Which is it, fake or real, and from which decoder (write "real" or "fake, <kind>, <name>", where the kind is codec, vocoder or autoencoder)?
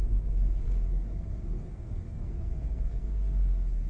fake, codec, SNAC